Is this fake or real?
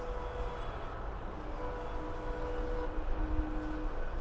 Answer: real